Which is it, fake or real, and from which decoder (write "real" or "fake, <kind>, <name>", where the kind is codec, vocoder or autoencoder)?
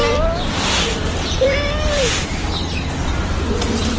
real